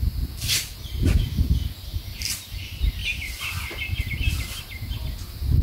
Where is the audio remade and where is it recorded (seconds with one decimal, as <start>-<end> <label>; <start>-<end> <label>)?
0.0-5.6 recorded